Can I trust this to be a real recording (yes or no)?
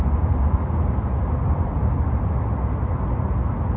yes